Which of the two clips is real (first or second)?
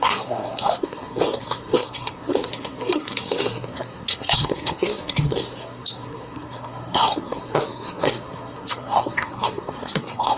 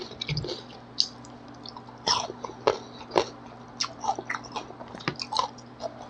second